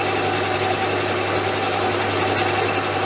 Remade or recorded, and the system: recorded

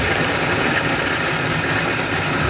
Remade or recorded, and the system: remade, vocoder, BigVGAN v2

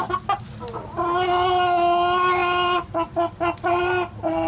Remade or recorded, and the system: recorded